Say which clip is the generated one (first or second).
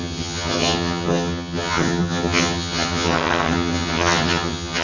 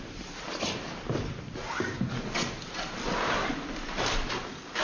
first